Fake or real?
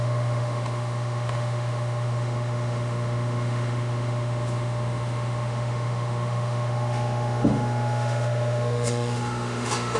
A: fake